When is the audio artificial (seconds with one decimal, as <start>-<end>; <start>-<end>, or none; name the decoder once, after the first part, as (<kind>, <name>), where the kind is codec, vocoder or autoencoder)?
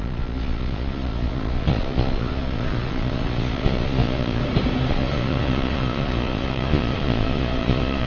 0.0-4.4 (vocoder, Vocos); 4.9-8.1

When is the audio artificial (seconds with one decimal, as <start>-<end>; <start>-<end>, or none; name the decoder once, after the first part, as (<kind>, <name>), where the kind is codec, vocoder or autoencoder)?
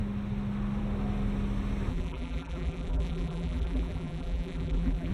1.9-5.1 (vocoder, BigVGAN v2)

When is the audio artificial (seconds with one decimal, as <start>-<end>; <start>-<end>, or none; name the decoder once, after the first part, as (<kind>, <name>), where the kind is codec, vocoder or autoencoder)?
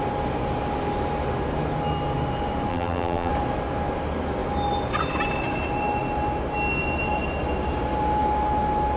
2.7-3.3 (vocoder, BigVGAN v2)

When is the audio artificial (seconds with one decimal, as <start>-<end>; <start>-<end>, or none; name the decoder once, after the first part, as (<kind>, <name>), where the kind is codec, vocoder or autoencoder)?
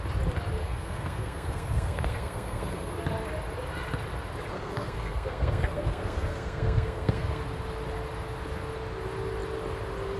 0.6-2.9 (codec, SNAC); 4.5-7.4